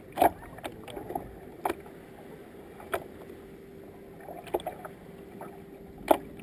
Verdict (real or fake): real